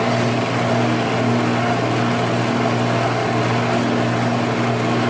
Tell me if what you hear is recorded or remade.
recorded